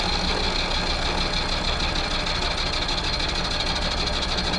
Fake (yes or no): no